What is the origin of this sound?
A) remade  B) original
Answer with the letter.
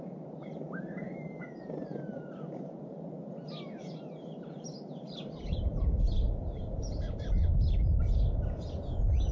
A